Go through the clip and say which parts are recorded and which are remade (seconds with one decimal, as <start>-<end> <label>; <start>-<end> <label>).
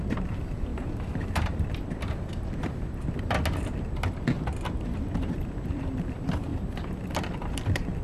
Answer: 0.0-0.7 remade; 0.7-5.2 recorded; 5.2-6.5 remade; 6.5-7.5 recorded; 7.5-8.0 remade